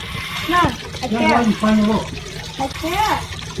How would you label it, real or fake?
real